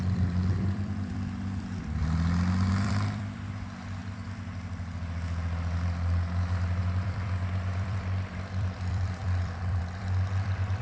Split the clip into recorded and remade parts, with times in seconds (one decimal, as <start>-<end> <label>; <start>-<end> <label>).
0.0-2.0 remade; 2.0-2.7 recorded; 2.7-4.0 remade; 4.0-6.8 recorded; 6.8-10.8 remade